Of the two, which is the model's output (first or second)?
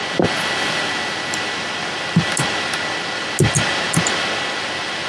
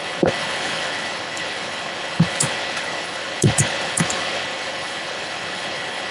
second